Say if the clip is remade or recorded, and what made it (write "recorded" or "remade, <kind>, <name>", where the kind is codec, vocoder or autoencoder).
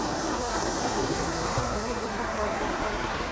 remade, codec, SNAC